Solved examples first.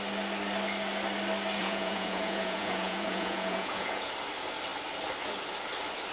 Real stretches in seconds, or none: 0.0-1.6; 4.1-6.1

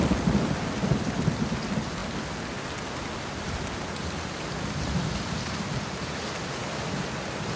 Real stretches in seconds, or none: 0.0-7.6

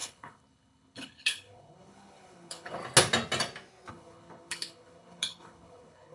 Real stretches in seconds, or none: 2.8-3.9

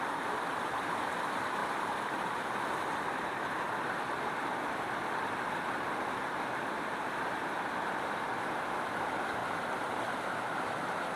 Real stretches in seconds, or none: 5.0-7.4